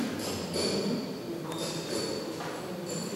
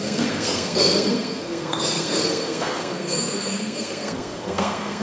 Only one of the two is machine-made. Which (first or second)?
second